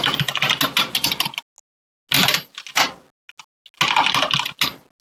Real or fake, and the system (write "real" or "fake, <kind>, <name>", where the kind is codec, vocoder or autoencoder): real